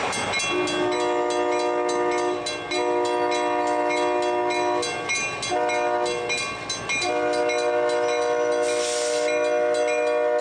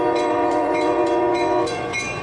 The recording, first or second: first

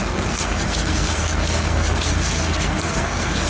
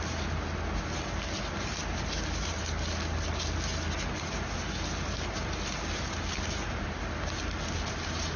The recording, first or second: second